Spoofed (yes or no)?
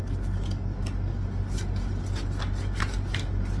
no